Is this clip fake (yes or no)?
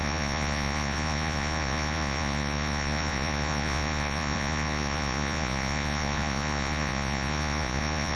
yes